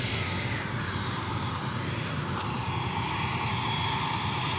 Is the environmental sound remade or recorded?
recorded